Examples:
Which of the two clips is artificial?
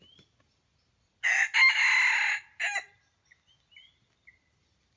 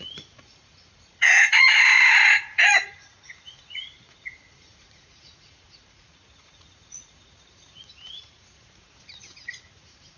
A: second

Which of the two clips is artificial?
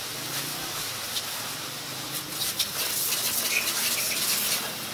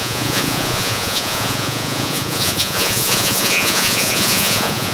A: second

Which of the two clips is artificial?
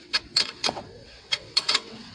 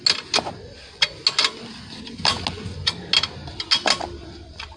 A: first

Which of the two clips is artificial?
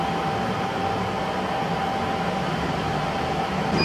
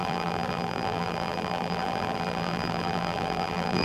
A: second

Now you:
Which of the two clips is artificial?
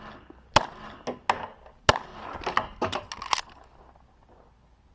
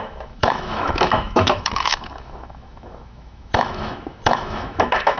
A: second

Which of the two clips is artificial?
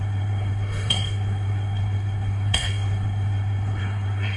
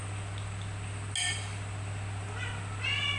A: first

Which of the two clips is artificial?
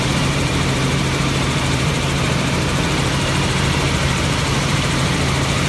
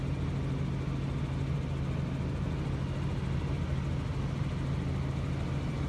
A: first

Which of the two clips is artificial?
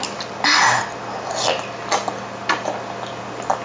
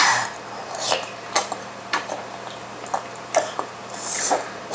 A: second